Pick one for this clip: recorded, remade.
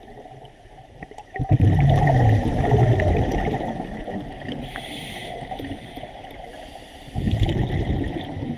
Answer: recorded